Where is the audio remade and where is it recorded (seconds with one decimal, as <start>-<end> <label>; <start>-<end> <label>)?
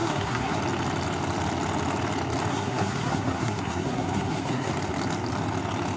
0.0-0.6 remade; 0.6-2.5 recorded; 2.5-4.7 remade; 4.7-6.0 recorded